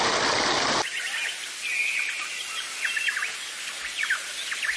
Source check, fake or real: real